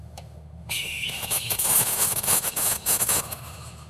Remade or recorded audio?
remade